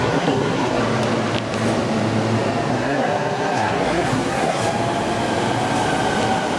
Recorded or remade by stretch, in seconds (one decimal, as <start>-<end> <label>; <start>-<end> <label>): 0.0-0.8 remade; 0.8-2.7 recorded; 2.7-4.6 remade; 4.6-6.6 recorded